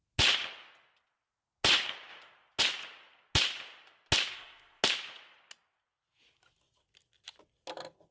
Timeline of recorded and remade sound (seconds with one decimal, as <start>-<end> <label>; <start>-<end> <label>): 0.0-4.3 recorded; 4.3-4.8 remade; 4.8-8.1 recorded